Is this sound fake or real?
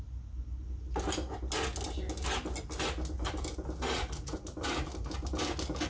real